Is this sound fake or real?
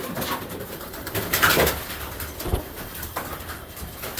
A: fake